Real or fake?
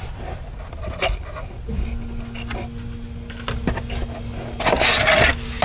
real